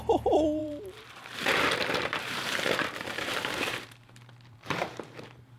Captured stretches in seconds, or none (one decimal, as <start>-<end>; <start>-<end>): 0.0-0.6; 1.4-2.1